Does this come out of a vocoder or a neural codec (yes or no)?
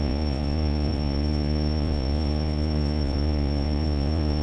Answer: yes